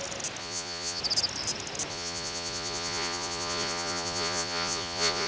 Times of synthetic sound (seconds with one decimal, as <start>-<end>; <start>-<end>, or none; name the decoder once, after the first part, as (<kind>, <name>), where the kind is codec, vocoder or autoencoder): 0.4-1.0 (vocoder, Vocos); 1.9-5.3